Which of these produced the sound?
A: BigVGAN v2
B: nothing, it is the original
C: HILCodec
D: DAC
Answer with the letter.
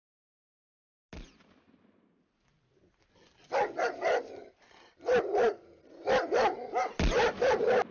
B